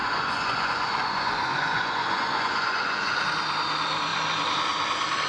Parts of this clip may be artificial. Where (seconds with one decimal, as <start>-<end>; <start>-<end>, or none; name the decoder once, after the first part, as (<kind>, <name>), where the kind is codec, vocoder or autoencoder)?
0.0-3.2 (vocoder, Vocos)